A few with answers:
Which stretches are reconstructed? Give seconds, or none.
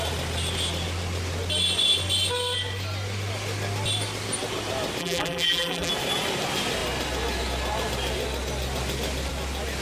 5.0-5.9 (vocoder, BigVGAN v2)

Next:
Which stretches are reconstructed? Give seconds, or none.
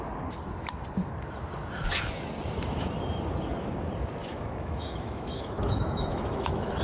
4.2-6.8 (autoencoder, DAC-VAE)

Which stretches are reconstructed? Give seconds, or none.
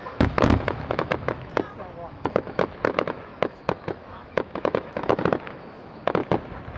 0.0-1.5 (autoencoder, DAC-VAE); 2.1-6.2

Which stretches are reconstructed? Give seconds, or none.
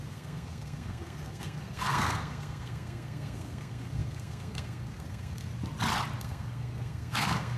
0.0-5.5 (codec, SNAC); 6.2-7.6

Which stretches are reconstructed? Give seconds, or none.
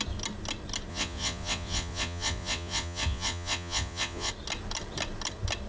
0.9-4.3 (vocoder, Vocos)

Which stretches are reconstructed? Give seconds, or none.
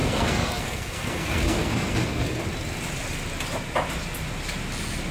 0.0-2.4 (codec, SNAC)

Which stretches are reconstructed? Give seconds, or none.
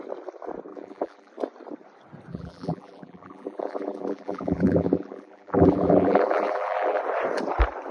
0.7-1.3 (vocoder, BigVGAN v2); 2.3-7.0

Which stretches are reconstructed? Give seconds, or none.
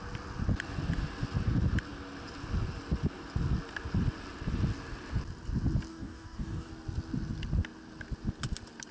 5.9-6.7 (codec, DAC)